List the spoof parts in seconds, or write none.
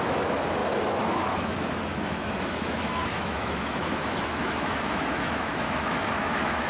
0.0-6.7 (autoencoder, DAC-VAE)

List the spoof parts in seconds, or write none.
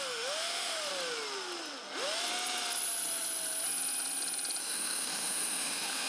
0.0-0.9 (autoencoder, DAC-VAE); 4.6-6.1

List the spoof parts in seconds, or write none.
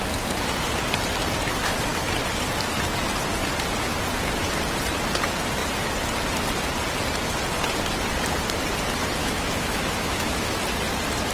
9.2-10.5 (autoencoder, DAC-VAE)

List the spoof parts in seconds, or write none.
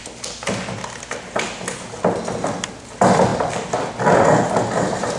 none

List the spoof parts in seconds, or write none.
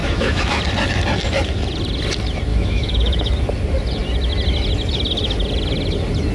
0.0-0.6 (autoencoder, DAC-VAE); 2.5-3.3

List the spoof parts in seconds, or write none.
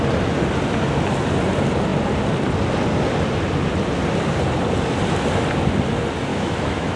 6.3-7.0 (autoencoder, DAC-VAE)